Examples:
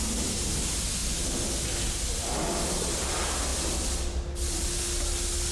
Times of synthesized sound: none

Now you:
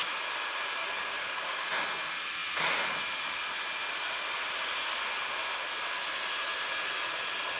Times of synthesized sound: 0.8-1.5

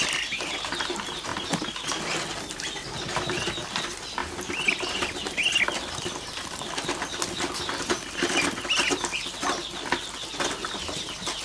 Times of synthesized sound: 1.3-1.9; 4.2-8.2

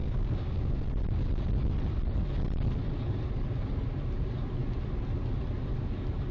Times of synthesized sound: 0.0-0.8

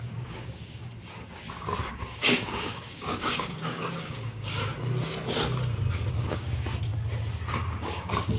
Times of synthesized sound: 0.0-0.9; 1.9-4.7; 6.2-6.9; 7.5-8.4

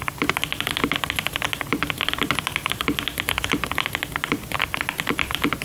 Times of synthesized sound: none